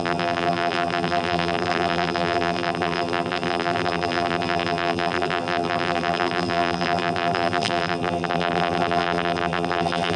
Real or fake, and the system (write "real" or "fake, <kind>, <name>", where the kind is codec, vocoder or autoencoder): fake, vocoder, BigVGAN v2